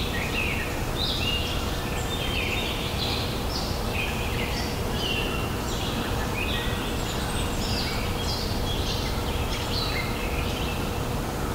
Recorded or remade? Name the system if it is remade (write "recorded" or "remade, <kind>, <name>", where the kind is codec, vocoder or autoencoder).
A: remade, vocoder, BigVGAN v2